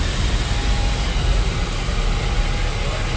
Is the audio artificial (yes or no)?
no